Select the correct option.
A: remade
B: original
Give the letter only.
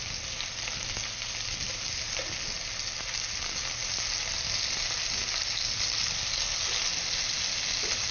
B